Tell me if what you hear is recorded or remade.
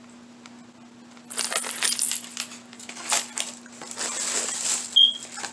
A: recorded